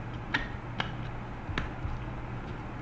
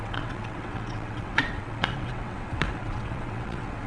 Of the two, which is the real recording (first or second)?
first